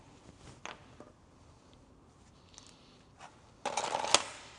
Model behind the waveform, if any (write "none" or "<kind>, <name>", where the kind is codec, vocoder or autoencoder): none